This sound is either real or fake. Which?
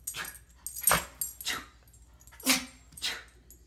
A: real